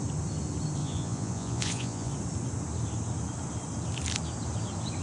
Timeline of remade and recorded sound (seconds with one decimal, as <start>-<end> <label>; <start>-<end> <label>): 0.0-0.8 recorded; 0.8-2.1 remade; 2.1-5.0 recorded